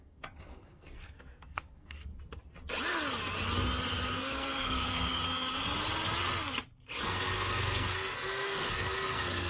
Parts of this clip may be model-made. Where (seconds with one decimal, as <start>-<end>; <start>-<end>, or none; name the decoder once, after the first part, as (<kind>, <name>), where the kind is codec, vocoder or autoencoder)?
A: 0.0-2.1 (codec, SNAC); 4.1-5.2; 7.0-9.5